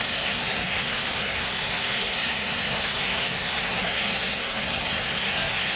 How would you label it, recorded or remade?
remade